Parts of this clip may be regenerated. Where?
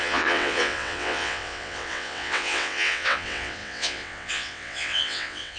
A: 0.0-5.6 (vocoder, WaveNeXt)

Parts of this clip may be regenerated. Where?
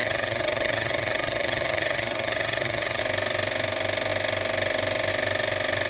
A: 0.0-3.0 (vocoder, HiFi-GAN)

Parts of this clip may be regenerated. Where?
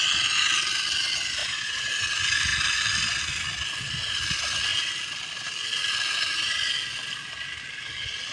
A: 1.4-1.9 (vocoder, Vocos)